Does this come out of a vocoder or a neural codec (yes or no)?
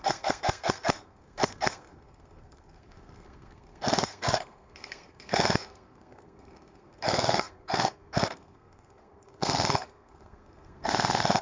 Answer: yes